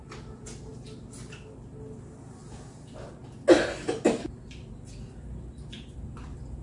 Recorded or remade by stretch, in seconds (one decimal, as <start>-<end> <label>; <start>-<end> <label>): 0.0-6.6 recorded

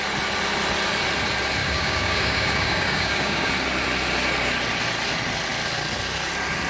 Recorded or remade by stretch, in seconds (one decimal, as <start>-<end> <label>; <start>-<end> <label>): 0.0-1.6 recorded; 1.6-3.5 remade; 3.5-6.7 recorded

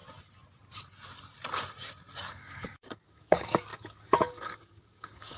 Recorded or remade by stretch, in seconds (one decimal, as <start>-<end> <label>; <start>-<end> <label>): 0.0-2.3 recorded; 2.3-5.4 remade